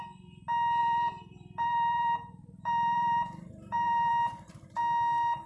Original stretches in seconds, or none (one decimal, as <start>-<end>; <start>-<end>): 0.0-0.8; 4.1-5.5